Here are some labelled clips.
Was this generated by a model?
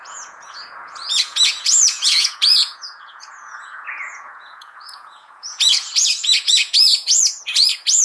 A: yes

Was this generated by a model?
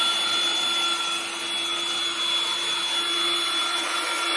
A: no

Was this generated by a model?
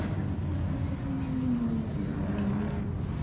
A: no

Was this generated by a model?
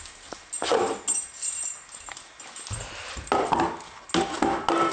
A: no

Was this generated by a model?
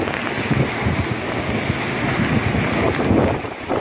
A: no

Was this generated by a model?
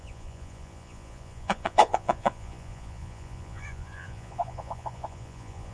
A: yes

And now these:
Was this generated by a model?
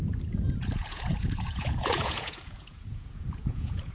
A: yes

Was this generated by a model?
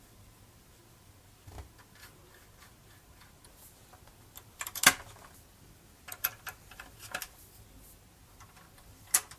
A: no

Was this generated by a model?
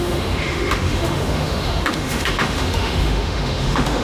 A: yes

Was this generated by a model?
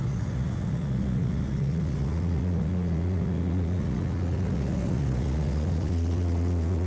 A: yes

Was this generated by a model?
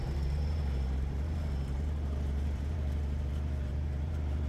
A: yes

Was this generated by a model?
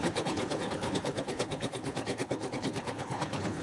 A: yes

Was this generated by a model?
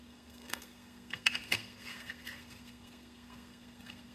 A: yes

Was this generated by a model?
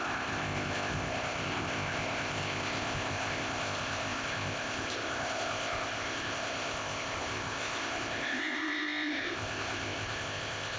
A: yes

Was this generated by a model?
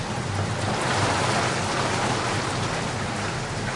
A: no